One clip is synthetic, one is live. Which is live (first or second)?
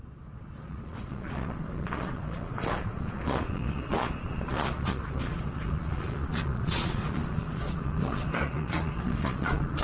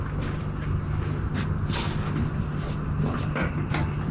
second